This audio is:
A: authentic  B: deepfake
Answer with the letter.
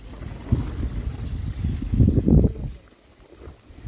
A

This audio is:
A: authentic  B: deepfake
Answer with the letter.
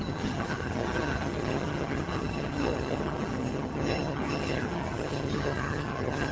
B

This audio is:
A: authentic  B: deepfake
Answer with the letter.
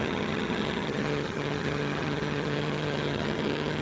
B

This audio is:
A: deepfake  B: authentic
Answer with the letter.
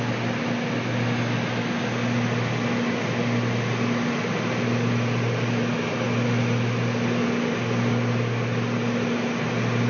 B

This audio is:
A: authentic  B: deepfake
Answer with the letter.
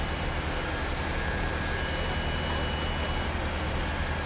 A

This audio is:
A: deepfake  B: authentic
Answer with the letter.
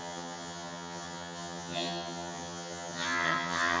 A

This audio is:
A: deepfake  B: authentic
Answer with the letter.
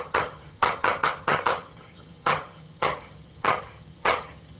A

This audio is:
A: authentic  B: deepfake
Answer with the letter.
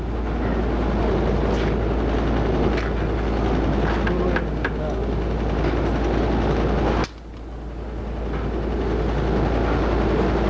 A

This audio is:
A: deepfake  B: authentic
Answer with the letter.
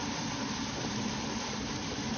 B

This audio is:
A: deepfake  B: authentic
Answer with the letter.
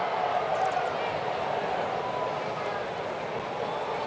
B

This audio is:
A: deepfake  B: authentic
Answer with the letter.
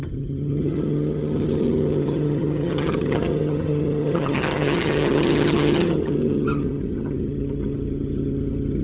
A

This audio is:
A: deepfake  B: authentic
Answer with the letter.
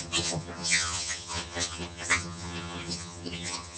A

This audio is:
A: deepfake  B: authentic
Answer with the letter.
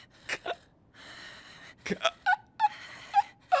B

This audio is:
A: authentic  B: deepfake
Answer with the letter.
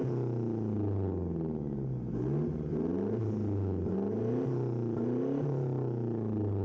A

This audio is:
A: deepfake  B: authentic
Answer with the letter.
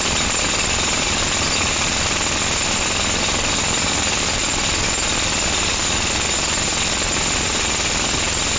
B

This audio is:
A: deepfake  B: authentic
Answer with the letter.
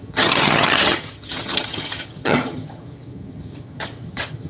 A